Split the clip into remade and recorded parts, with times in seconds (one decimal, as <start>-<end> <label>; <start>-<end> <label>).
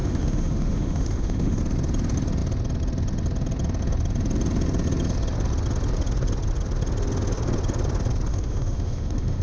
0.0-1.6 remade; 1.6-8.3 recorded; 8.3-9.4 remade